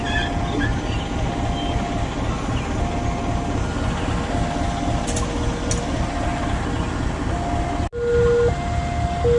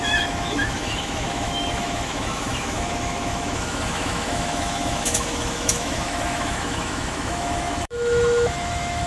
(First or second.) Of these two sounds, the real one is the first